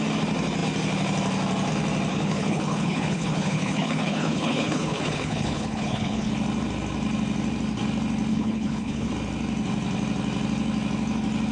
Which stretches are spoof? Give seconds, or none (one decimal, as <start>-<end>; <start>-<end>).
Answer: 2.1-6.3; 8.3-9.1